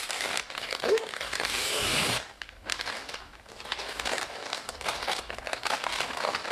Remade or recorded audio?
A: remade